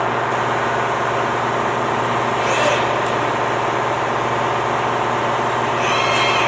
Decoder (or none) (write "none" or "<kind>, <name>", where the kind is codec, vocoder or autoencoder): none